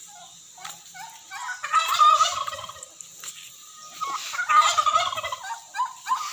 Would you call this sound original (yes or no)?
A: yes